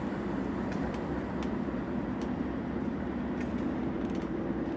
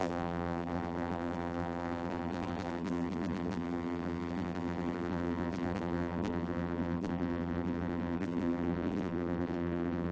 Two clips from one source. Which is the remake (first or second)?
second